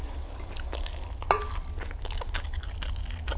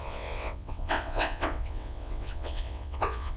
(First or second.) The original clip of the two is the first